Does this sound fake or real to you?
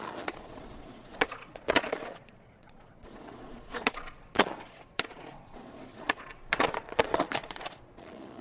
fake